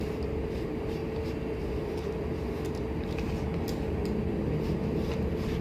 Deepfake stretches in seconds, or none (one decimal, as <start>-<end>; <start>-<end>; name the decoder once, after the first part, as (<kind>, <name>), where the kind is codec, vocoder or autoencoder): 0.0-1.0 (vocoder, BigVGAN v2); 4.4-5.6